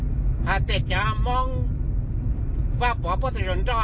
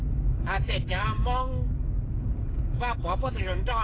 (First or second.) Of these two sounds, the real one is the first